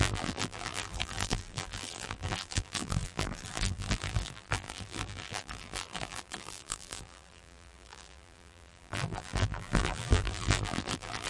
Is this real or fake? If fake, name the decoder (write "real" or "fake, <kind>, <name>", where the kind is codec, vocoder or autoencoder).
fake, vocoder, BigVGAN v2